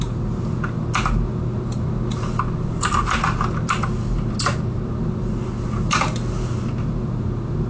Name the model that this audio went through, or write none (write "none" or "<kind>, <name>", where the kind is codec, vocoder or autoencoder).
none